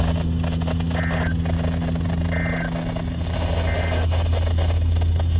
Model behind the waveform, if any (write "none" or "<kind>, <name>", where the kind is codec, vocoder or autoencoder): none